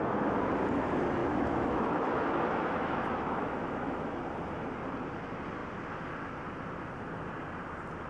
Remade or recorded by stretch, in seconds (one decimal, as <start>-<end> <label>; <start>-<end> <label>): 0.0-1.2 recorded; 1.2-4.2 remade; 4.2-8.1 recorded